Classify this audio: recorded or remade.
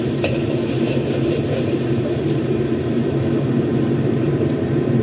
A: remade